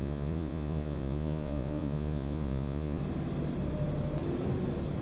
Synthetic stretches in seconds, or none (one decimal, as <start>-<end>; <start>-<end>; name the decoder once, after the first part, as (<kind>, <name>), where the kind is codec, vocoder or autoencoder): 0.0-3.0 (vocoder, Vocos)

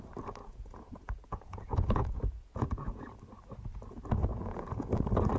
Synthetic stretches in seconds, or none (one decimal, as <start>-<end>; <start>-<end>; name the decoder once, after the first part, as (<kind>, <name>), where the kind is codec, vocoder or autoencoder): 0.4-3.0 (vocoder, Vocos); 4.2-4.9